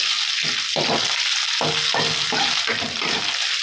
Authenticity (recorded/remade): recorded